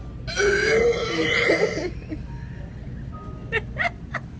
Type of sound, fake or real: real